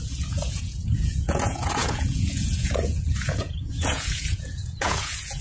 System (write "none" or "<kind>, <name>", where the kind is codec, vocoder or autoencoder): vocoder, Vocos